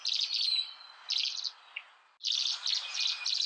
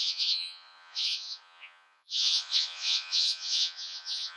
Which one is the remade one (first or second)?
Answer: second